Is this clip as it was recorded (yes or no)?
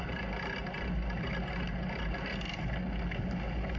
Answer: yes